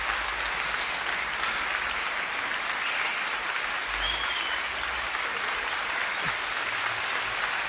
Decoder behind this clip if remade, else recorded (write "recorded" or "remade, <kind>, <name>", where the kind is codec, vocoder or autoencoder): recorded